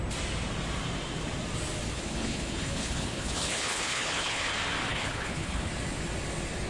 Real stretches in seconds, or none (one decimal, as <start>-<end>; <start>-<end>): 0.0-1.9; 4.5-4.9; 5.7-6.7